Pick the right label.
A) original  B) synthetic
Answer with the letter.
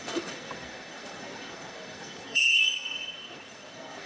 B